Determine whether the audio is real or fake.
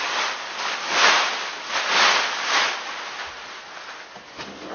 real